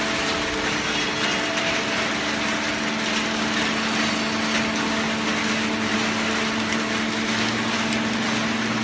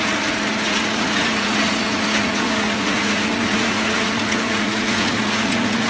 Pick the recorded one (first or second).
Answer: first